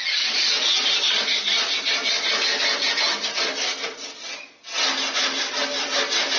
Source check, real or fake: real